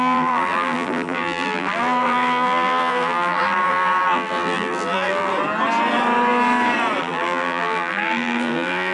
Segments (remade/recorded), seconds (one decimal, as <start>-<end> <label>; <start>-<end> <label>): 0.0-5.3 remade; 5.3-7.0 recorded; 7.0-8.9 remade

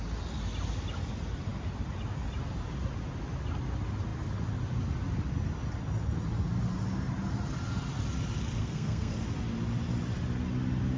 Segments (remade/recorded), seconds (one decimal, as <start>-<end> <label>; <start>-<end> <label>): 0.0-8.6 recorded; 8.6-9.1 remade; 9.1-11.0 recorded

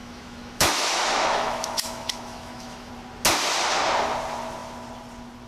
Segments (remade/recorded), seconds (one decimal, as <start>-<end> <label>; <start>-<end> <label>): 0.0-2.9 remade; 2.9-5.5 recorded

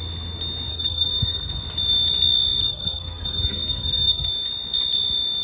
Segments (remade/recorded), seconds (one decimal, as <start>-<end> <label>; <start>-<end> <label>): 0.0-0.7 recorded; 0.7-1.6 remade; 1.6-2.6 recorded; 2.6-4.3 remade; 4.3-5.4 recorded

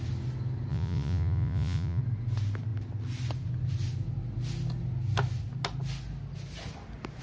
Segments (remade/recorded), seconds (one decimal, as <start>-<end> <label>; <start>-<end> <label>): 0.0-0.7 recorded; 0.7-2.0 remade; 2.0-7.2 recorded

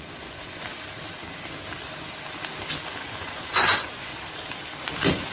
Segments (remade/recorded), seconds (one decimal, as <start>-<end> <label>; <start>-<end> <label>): 0.0-0.7 remade; 0.7-3.0 recorded; 3.0-4.1 remade; 4.1-5.3 recorded